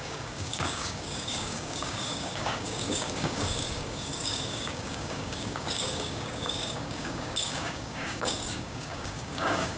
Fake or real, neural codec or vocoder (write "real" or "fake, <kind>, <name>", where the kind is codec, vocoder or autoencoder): fake, codec, DAC